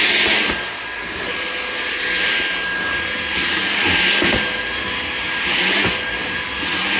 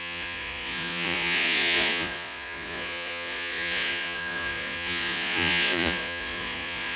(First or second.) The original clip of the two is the first